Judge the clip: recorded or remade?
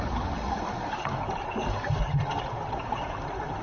recorded